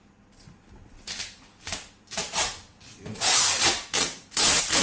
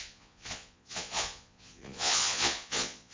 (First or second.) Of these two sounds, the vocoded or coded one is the second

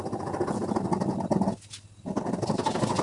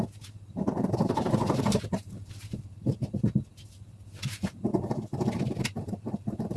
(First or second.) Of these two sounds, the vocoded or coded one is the second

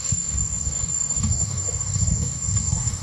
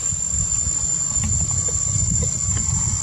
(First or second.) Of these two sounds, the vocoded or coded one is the first